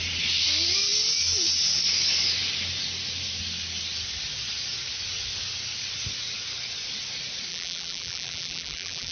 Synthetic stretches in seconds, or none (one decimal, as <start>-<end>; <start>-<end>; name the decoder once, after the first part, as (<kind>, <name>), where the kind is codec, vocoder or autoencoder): 7.5-9.1 (vocoder, BigVGAN v2)